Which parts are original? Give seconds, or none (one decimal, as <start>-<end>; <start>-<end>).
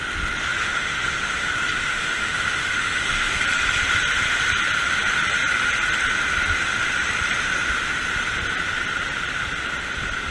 0.0-0.5; 1.5-1.9; 3.4-10.3